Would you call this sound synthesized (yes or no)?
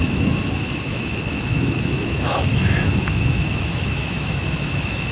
yes